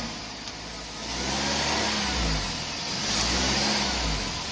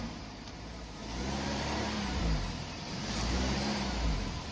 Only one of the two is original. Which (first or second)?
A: first